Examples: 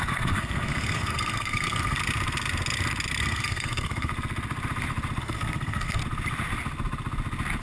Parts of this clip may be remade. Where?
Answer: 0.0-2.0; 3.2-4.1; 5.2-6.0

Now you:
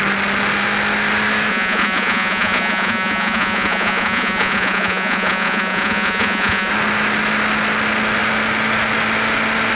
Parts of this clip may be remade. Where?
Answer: 1.5-6.7

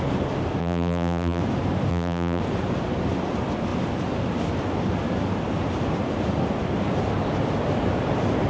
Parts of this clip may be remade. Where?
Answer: 0.6-1.4; 1.9-2.4

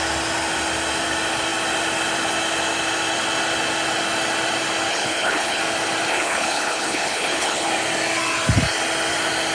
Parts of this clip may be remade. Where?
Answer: 4.9-5.6; 6.1-7.7

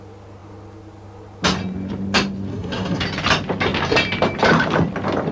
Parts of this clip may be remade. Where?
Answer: 2.5-3.0